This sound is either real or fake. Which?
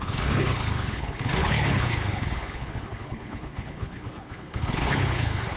fake